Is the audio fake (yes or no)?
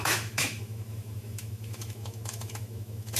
yes